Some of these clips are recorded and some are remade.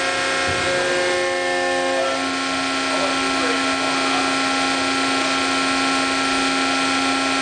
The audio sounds recorded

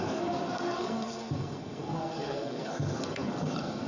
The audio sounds remade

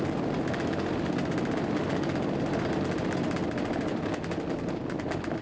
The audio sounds recorded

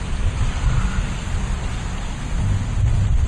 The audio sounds recorded